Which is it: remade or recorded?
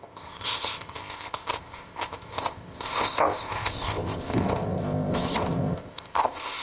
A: remade